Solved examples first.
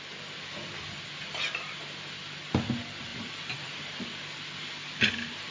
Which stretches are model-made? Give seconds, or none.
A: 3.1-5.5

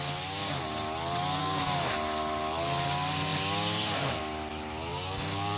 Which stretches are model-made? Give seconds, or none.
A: 1.4-1.9; 4.9-5.6

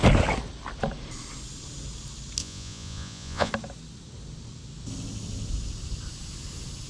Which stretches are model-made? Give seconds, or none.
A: 2.4-3.5

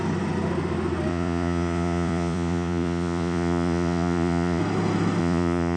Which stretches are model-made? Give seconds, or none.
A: 1.1-4.6; 5.2-5.8

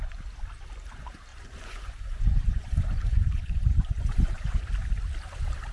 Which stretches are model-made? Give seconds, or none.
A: 1.3-4.7

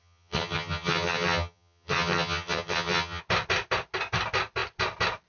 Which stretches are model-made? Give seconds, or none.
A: 0.0-3.2

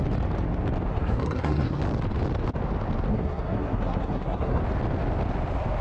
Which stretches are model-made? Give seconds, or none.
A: 0.9-1.8; 3.1-4.6

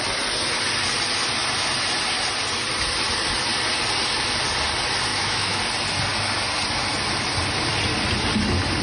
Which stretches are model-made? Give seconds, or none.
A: 5.1-5.6